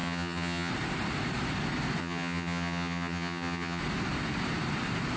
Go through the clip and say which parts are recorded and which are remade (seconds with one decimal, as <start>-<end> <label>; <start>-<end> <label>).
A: 0.0-0.7 remade; 0.7-2.0 recorded; 2.0-3.8 remade; 3.8-5.2 recorded